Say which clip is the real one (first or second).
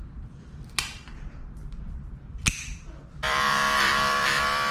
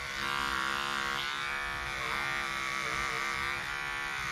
second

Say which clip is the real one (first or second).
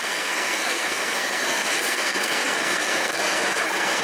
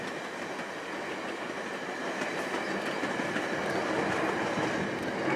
second